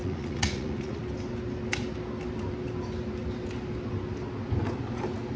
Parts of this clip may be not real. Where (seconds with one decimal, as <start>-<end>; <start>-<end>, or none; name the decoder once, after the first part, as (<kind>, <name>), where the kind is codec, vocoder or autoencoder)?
0.0-1.0 (vocoder, Vocos)